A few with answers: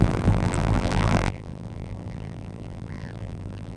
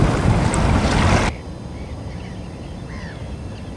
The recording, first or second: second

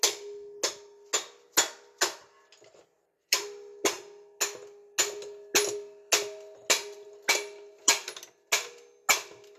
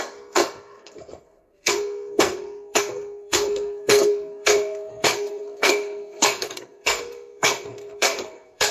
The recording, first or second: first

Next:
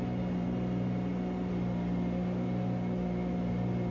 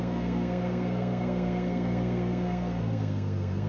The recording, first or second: first